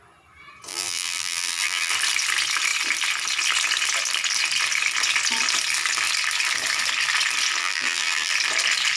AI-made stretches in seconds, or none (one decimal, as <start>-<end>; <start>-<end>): 0.7-1.9; 7.6-8.3